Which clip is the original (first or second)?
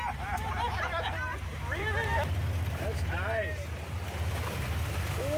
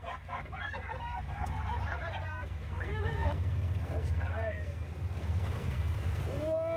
first